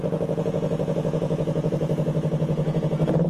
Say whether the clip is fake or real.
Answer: fake